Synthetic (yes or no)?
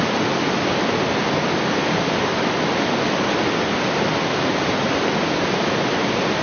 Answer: no